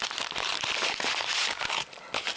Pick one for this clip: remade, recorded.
recorded